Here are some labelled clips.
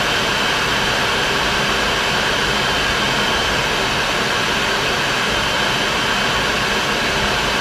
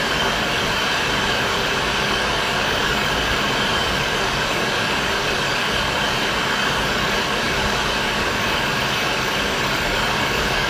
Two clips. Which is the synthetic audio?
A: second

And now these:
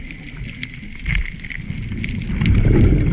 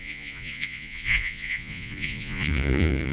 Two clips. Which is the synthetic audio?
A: second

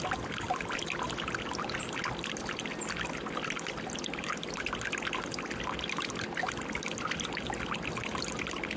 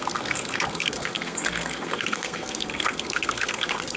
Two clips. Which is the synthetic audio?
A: second